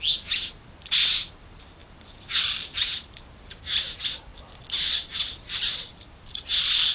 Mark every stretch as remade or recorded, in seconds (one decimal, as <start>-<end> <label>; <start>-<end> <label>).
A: 0.0-1.8 recorded; 1.8-3.6 remade; 3.6-5.9 recorded; 5.9-6.4 remade; 6.4-6.9 recorded

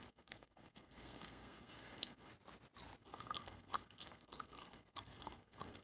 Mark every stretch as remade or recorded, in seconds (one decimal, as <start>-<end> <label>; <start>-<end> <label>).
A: 0.0-2.3 remade; 2.3-3.0 recorded; 3.0-5.8 remade

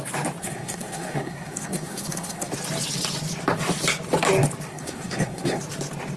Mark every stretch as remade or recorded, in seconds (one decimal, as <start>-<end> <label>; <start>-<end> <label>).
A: 0.0-0.4 recorded; 0.4-2.5 remade; 2.5-4.7 recorded; 4.7-5.6 remade; 5.6-6.2 recorded

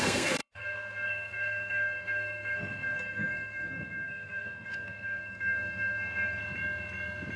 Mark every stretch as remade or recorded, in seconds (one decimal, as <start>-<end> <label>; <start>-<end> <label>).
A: 0.0-6.4 remade; 6.4-7.4 recorded